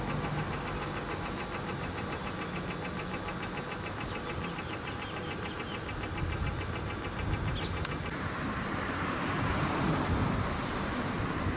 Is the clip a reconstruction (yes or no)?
no